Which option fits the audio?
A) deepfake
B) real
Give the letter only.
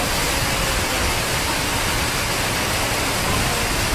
B